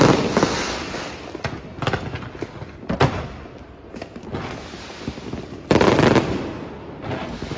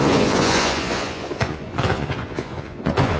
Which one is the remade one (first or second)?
second